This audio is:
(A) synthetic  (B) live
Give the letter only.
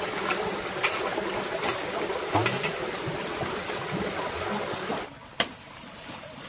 B